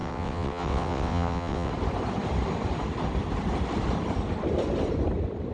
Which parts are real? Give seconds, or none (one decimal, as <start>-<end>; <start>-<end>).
1.7-5.5